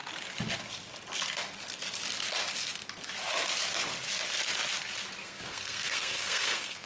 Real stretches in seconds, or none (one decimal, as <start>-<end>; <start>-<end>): 0.0-5.2